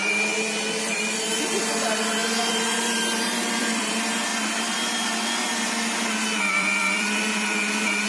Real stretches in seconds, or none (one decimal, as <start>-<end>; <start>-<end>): 4.3-6.4